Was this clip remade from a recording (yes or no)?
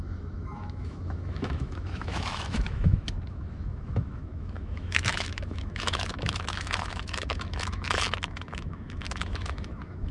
yes